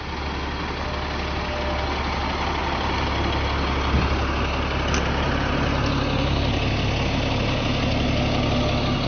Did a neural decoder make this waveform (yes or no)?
no